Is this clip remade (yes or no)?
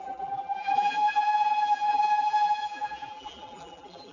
yes